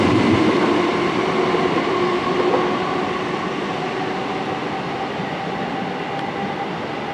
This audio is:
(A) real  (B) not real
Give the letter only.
A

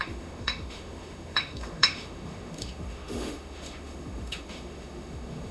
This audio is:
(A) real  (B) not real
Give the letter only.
B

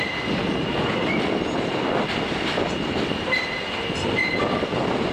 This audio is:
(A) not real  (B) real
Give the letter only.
B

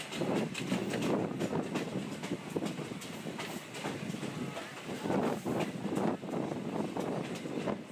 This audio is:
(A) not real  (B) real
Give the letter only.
B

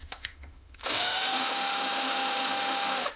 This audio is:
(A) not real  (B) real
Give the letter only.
A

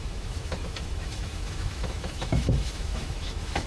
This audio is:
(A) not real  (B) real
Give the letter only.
A